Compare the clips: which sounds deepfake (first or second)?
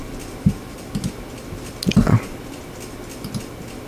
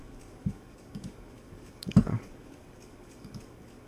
second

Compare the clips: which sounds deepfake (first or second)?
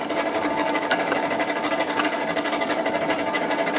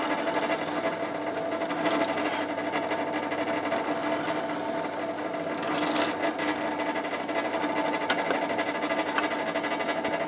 first